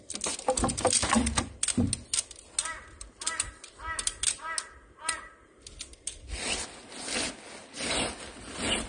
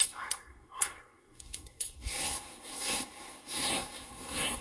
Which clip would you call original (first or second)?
first